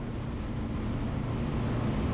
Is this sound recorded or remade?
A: recorded